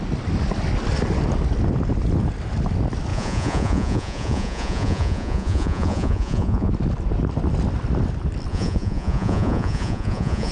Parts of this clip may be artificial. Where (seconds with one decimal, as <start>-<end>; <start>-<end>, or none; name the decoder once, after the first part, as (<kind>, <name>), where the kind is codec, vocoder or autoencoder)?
3.1-6.7 (vocoder, Vocos); 8.5-10.5